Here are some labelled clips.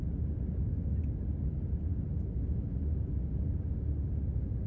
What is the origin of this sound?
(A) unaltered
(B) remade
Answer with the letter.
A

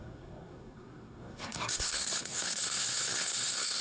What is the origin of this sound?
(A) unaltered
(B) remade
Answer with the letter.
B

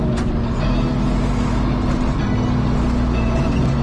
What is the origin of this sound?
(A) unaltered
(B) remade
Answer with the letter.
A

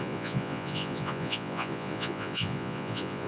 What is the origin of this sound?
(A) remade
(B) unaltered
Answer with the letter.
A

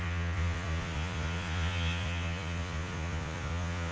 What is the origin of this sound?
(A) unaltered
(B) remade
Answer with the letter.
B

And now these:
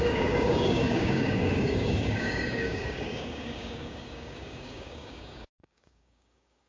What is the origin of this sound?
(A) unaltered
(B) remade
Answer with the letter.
B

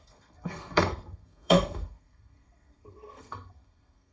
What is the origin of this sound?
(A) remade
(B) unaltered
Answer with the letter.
A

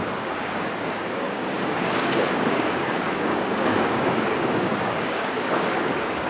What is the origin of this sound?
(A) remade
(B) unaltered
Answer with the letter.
A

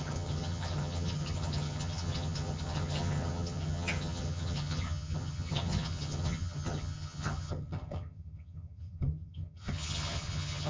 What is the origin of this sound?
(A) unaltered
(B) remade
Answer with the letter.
B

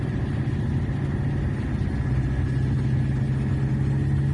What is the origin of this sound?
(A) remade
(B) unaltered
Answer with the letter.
B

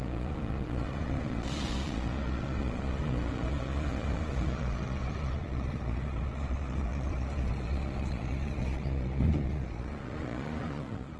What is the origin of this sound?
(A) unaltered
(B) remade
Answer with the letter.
B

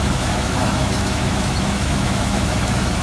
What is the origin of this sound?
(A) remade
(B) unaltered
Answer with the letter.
A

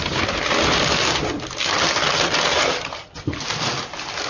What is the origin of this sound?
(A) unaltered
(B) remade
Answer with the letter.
A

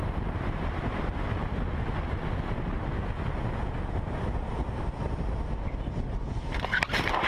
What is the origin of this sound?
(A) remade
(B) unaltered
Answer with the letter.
B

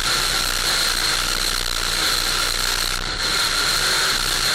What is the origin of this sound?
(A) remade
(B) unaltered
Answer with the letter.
B